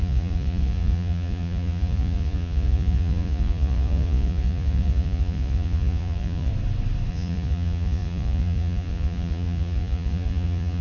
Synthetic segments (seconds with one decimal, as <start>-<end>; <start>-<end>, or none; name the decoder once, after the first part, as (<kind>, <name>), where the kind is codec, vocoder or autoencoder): 0.0-6.5 (vocoder, Vocos); 7.1-10.8